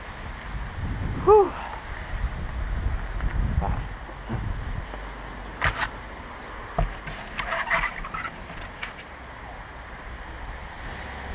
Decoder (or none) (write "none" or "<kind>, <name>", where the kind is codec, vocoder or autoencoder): none